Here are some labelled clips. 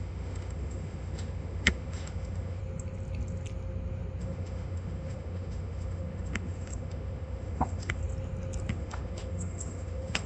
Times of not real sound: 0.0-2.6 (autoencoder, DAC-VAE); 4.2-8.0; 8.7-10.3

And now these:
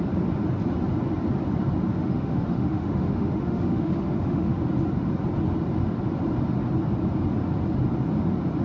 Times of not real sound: 1.9-4.6 (autoencoder, DAC-VAE)

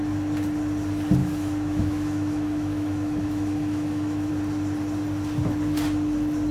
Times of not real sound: 1.2-4.3 (autoencoder, DAC-VAE)

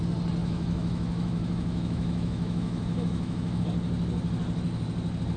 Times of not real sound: 0.4-3.6 (autoencoder, DAC-VAE)

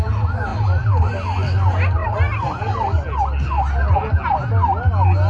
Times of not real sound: none